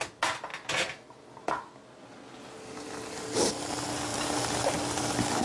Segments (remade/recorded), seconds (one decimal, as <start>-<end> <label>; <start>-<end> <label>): 0.0-5.4 recorded